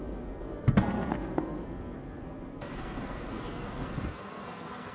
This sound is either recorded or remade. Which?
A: remade